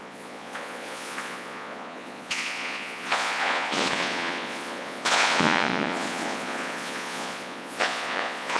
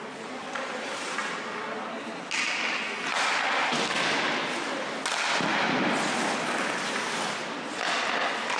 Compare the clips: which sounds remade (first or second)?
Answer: first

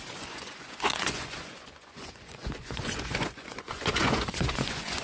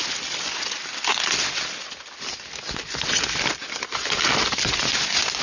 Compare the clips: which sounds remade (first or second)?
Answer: first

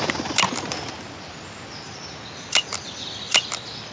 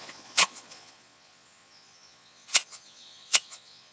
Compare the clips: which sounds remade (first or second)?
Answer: second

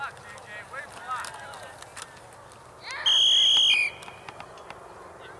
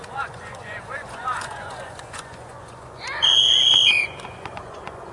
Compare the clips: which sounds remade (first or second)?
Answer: second